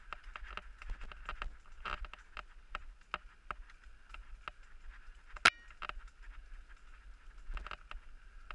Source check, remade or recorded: recorded